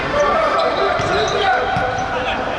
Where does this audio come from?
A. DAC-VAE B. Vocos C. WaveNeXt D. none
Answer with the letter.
D